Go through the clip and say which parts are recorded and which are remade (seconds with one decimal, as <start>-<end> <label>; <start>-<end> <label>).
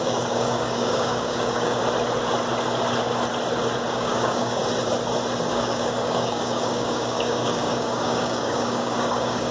0.0-1.8 remade; 1.8-3.9 recorded; 3.9-4.6 remade; 4.6-5.5 recorded; 5.5-9.5 remade